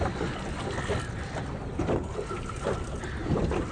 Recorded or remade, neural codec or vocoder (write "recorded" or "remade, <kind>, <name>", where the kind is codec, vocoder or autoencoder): recorded